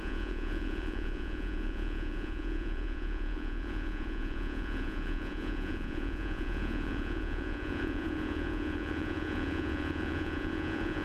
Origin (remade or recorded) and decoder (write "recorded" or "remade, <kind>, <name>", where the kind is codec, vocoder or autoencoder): remade, vocoder, Vocos